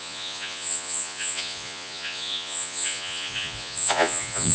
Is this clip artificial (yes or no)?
yes